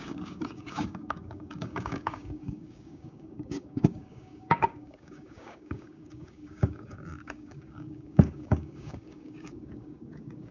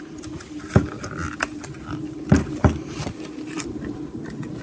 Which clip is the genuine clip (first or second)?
second